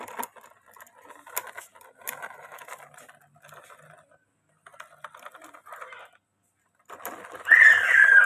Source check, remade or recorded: recorded